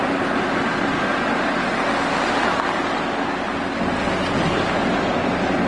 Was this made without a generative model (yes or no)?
yes